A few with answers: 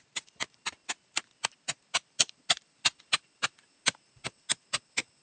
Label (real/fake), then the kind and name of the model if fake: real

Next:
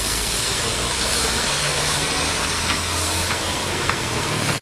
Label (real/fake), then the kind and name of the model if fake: fake, codec, SNAC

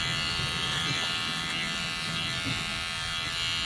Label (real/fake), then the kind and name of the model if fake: real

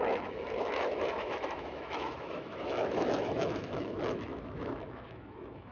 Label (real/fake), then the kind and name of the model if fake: fake, autoencoder, DAC-VAE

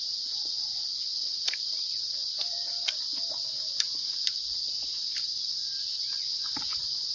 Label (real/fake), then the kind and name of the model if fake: real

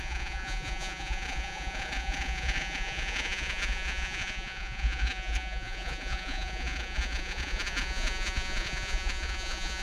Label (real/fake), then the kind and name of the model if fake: fake, vocoder, Vocos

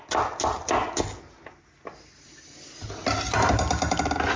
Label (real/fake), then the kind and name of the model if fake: real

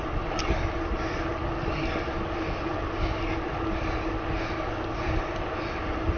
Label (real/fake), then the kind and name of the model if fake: real